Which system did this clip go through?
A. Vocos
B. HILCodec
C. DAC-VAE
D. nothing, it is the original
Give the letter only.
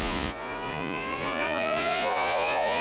A